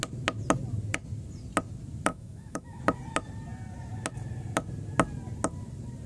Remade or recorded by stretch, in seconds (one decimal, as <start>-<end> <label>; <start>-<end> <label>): 0.0-2.1 recorded; 2.1-2.8 remade; 2.8-6.1 recorded

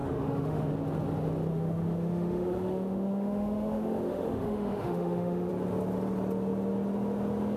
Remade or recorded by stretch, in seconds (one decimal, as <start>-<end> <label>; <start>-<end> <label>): 0.0-0.7 remade; 0.7-1.5 recorded; 1.5-5.5 remade; 5.5-7.6 recorded

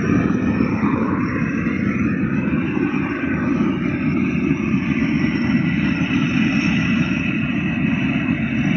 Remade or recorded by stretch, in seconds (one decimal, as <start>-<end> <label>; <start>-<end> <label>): 0.0-0.7 recorded; 0.7-1.2 remade; 1.2-8.8 recorded

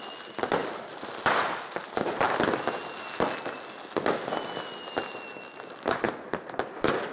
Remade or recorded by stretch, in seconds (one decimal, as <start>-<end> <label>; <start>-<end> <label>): 0.0-0.6 recorded; 0.6-3.0 remade; 3.0-7.1 recorded

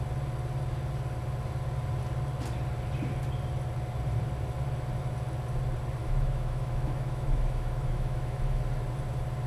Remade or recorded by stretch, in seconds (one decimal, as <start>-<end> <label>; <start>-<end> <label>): 0.0-6.0 recorded; 6.0-8.6 remade; 8.6-9.5 recorded